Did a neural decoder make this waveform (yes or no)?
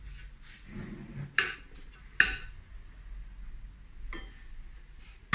no